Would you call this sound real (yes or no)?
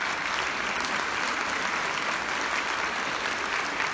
yes